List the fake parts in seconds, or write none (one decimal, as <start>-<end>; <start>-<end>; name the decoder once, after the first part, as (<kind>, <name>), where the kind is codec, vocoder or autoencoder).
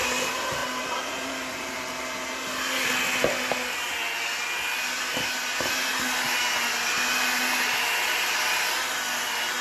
0.6-1.8 (vocoder, BigVGAN v2)